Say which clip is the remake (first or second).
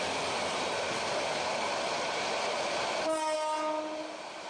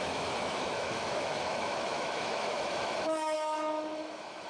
second